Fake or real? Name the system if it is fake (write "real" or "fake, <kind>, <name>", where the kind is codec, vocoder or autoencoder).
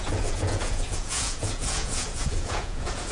fake, vocoder, Vocos